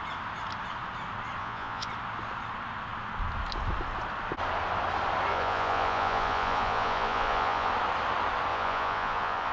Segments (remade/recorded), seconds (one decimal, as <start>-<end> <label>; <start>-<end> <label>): 0.0-1.4 recorded; 1.4-1.9 remade; 1.9-5.3 recorded; 5.3-7.7 remade; 7.7-8.5 recorded; 8.5-9.5 remade